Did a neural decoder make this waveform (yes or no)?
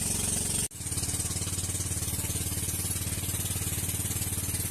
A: no